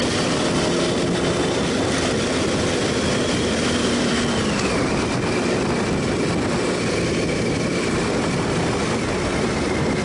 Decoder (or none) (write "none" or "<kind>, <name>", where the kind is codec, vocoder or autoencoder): none